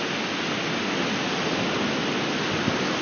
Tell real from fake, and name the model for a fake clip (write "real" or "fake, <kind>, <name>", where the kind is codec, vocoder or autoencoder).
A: real